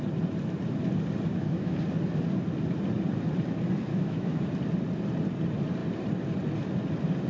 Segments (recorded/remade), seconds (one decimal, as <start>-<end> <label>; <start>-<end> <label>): 0.0-1.3 recorded; 1.3-1.8 remade; 1.8-3.9 recorded; 3.9-4.5 remade; 4.5-7.3 recorded

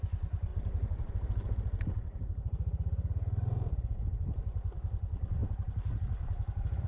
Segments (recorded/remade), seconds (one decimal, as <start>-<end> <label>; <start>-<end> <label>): 0.0-0.5 recorded; 0.5-3.7 remade; 3.7-5.4 recorded; 5.4-6.0 remade; 6.0-6.9 recorded

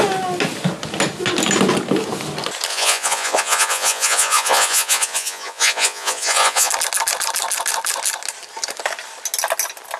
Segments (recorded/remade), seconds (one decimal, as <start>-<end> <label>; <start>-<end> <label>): 0.0-2.7 recorded; 2.7-6.7 remade; 6.7-10.0 recorded

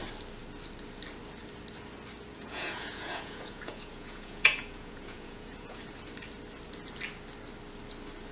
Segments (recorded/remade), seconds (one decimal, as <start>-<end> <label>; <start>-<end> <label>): 0.0-2.3 recorded; 2.3-5.8 remade; 5.8-8.3 recorded

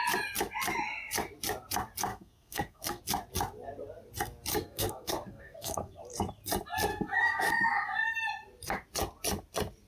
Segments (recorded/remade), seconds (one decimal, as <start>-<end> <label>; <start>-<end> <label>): 0.0-2.1 recorded; 2.1-3.0 remade; 3.0-4.5 recorded; 4.5-6.0 remade; 6.0-6.9 recorded; 6.9-7.5 remade; 7.5-9.9 recorded

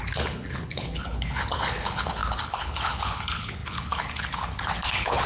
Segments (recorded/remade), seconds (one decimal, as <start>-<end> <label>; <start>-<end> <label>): 0.0-5.3 remade